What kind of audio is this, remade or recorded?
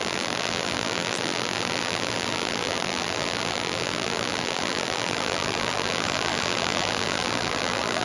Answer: remade